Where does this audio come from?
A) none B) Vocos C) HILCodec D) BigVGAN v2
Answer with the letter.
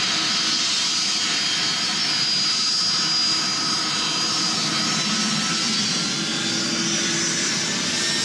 A